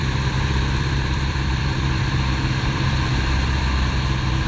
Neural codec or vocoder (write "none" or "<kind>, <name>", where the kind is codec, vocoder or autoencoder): vocoder, BigVGAN v2